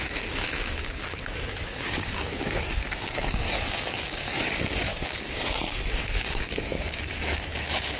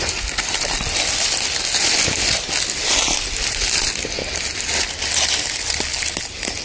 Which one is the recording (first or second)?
second